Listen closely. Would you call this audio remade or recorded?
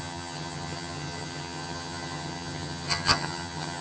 remade